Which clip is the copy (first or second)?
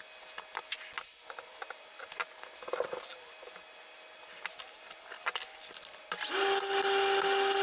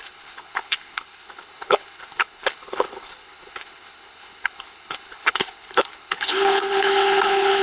second